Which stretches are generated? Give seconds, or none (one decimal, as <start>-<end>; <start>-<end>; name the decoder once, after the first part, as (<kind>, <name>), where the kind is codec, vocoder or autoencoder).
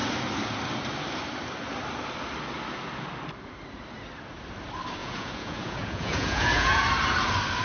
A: 5.0-6.8 (vocoder, Vocos)